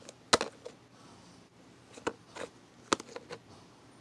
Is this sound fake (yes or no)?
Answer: no